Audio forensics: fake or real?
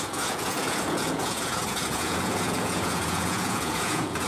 fake